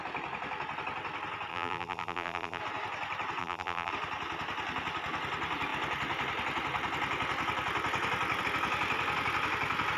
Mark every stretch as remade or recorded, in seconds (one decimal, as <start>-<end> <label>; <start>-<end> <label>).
0.0-1.5 recorded; 1.5-2.6 remade; 2.6-3.4 recorded; 3.4-3.9 remade; 3.9-10.0 recorded